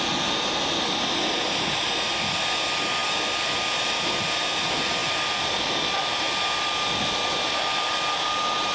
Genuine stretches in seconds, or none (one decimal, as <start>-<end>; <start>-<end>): 0.0-8.7